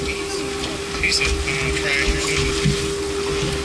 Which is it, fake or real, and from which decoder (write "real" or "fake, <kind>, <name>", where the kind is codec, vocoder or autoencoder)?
real